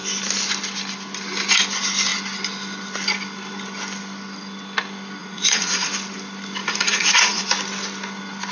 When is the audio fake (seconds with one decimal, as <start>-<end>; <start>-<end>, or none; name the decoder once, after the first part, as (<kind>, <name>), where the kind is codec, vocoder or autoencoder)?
5.2-5.9 (vocoder, Vocos); 6.6-7.4